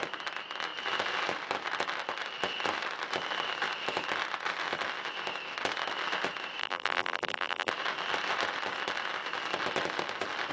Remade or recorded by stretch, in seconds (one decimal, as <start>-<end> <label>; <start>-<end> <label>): 0.0-6.6 recorded; 6.6-7.7 remade; 7.7-10.5 recorded